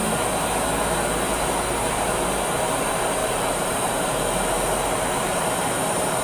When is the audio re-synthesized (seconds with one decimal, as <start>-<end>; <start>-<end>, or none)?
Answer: 3.2-6.2